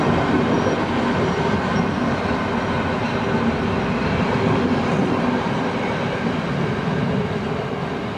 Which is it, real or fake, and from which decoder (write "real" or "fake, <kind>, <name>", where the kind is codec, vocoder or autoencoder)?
real